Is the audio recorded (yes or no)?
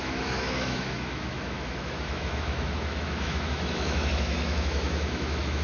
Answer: no